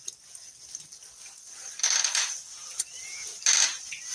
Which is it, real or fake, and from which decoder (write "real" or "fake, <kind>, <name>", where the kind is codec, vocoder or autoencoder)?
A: real